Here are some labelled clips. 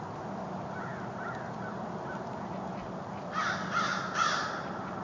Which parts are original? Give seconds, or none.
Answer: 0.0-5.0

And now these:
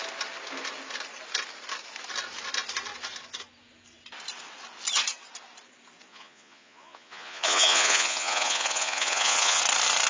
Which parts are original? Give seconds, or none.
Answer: 0.0-6.1; 9.6-10.1

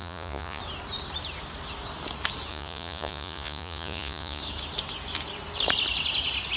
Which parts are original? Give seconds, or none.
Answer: 0.6-2.5; 4.4-6.6